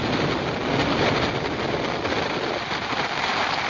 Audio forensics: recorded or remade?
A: recorded